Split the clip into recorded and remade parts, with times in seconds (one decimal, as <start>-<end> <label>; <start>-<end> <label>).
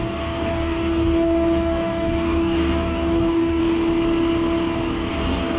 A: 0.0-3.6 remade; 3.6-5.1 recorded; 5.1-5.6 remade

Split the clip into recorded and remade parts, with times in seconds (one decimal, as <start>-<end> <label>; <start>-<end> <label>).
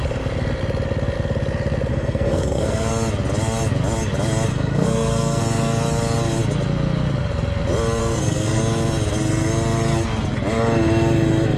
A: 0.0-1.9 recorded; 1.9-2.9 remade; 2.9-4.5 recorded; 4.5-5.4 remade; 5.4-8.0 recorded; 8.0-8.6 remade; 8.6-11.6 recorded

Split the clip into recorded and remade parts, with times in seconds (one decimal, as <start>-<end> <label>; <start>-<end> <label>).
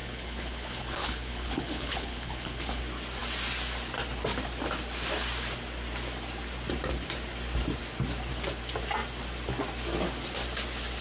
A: 0.0-2.8 remade; 2.8-11.0 recorded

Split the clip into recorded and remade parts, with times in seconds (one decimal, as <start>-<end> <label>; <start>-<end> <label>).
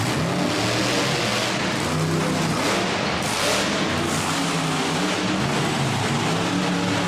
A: 0.0-7.1 recorded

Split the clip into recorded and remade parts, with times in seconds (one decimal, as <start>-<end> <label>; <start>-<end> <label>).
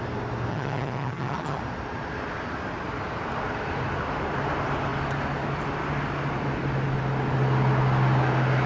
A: 0.0-0.5 recorded; 0.5-1.6 remade; 1.6-8.7 recorded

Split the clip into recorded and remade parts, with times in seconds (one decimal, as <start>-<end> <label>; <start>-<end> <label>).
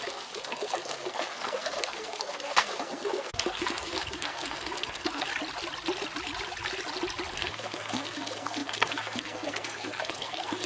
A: 0.0-5.3 remade; 5.3-7.3 recorded; 7.3-10.7 remade